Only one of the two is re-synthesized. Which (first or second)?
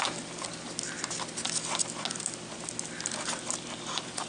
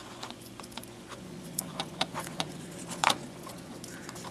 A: second